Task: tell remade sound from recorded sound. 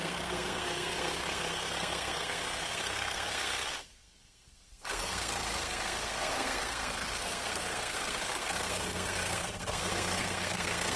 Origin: remade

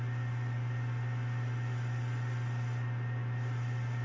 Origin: recorded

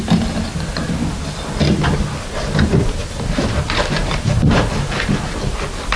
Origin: recorded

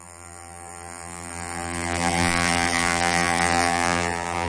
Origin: remade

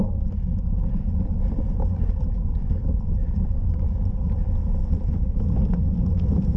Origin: recorded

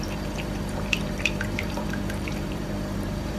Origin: remade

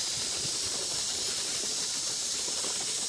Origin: remade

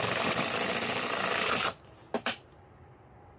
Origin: recorded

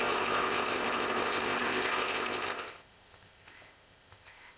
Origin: remade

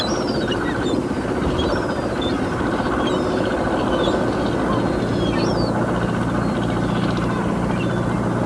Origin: recorded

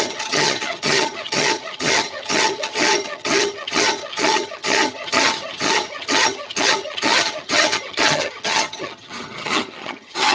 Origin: remade